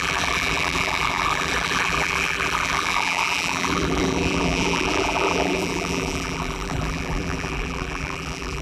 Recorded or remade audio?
remade